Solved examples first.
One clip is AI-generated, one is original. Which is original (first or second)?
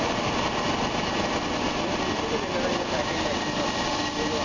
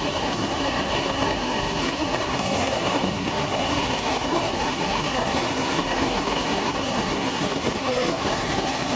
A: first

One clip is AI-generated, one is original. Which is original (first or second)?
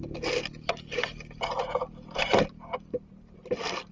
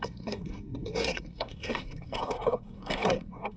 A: first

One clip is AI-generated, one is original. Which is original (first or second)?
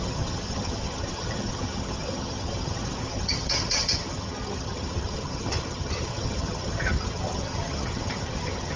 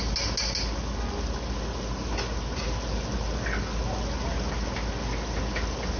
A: second